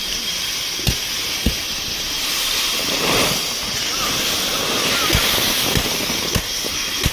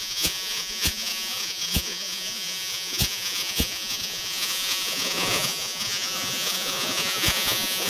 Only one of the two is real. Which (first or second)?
first